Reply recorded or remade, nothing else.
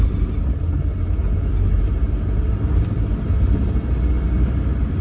recorded